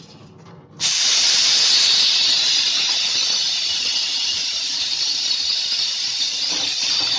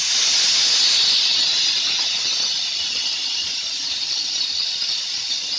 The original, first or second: second